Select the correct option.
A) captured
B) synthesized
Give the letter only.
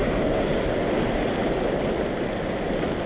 A